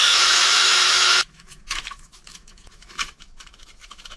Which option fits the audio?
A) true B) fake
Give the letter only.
B